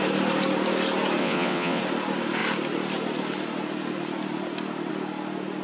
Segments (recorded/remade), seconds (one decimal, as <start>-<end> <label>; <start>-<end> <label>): 0.0-1.2 recorded; 1.2-1.8 remade; 1.8-5.6 recorded